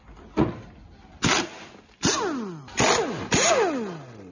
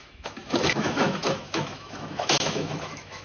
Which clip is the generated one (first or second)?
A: second